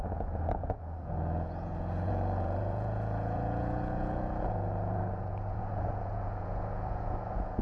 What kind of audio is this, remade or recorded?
remade